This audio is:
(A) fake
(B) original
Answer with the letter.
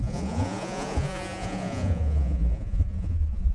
A